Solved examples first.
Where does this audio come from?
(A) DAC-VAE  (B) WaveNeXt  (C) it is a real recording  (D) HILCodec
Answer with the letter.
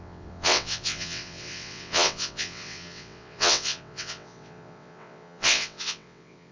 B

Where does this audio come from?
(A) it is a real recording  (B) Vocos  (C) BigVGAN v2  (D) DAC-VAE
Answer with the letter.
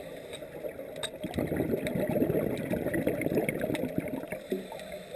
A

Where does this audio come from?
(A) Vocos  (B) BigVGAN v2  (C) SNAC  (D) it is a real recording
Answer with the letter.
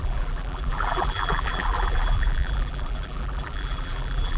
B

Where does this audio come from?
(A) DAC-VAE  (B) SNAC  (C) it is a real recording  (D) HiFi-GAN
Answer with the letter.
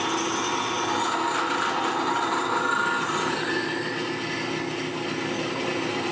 C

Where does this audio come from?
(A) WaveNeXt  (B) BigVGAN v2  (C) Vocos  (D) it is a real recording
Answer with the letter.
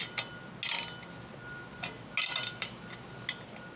D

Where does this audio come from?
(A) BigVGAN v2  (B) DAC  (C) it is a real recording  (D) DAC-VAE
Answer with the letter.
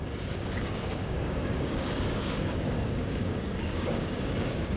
B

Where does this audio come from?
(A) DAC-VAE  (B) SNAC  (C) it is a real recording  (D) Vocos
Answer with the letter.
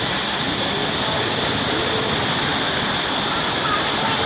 C